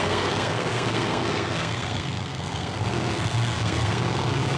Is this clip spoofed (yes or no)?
yes